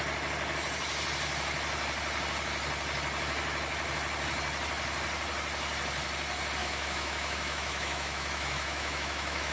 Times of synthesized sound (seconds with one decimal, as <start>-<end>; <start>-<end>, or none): 6.6-9.5